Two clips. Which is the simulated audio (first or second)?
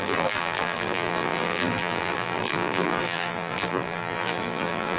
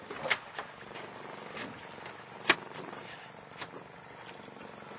first